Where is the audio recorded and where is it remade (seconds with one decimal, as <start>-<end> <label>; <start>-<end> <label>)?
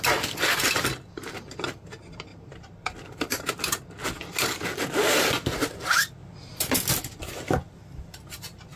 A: 0.0-2.3 recorded; 2.3-3.5 remade; 3.5-8.8 recorded